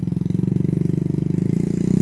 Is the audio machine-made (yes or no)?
no